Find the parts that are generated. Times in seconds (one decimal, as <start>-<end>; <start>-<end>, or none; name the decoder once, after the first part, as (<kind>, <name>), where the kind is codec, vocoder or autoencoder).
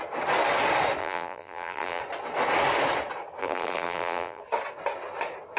1.0-2.0 (vocoder, BigVGAN v2); 3.4-4.4